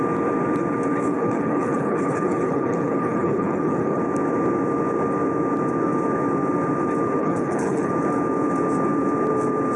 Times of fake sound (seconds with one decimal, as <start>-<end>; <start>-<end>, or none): 1.1-4.0; 7.2-7.9